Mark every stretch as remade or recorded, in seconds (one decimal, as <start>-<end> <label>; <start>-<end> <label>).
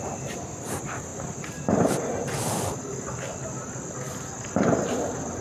0.0-5.4 recorded